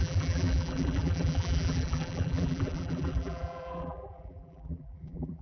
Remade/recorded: remade